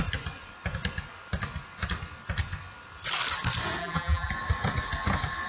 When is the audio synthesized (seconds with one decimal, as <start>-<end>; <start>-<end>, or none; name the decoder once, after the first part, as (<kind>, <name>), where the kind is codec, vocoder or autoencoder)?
3.8-4.3 (vocoder, BigVGAN v2)